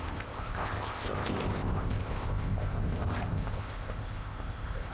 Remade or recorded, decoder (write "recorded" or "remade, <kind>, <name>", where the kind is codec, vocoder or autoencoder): remade, codec, ZipCodec